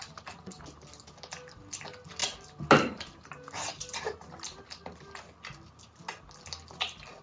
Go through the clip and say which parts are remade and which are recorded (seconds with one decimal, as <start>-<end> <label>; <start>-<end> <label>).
0.0-7.2 recorded